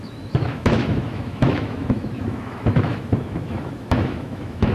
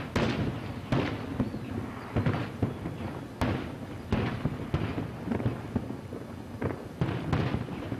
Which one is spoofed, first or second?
first